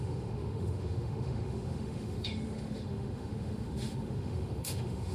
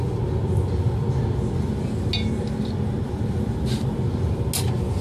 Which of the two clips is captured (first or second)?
second